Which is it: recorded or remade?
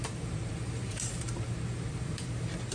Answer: remade